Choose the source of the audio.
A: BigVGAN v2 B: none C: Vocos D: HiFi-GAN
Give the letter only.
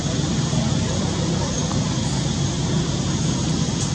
B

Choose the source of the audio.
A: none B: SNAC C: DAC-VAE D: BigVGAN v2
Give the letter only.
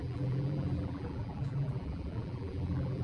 D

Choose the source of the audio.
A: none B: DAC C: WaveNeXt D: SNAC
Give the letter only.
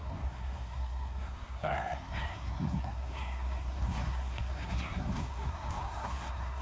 D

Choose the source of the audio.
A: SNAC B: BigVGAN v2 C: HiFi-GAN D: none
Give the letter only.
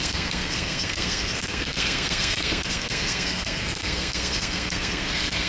A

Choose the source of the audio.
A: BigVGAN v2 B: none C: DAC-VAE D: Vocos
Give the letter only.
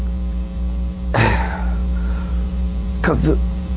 A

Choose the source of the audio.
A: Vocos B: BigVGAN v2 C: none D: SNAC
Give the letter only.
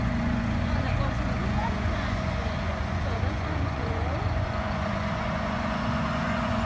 A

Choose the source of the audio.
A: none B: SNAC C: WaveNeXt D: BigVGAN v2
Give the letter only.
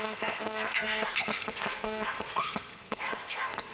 B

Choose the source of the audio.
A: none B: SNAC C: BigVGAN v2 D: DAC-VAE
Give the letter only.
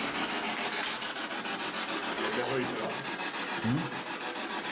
A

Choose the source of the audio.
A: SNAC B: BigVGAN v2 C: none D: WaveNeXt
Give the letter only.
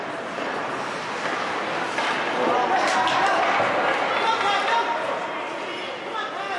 C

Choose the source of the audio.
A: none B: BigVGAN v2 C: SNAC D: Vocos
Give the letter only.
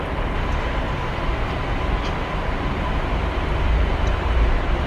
B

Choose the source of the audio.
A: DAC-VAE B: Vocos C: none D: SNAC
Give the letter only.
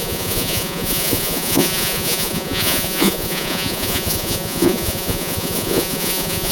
B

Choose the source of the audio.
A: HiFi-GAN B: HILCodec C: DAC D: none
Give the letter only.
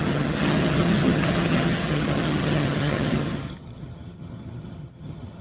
A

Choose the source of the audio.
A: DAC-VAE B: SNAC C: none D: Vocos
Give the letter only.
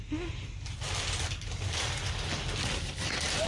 C